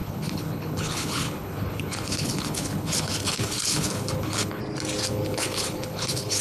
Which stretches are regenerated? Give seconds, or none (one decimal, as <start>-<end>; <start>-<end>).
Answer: 0.0-4.6; 5.1-6.4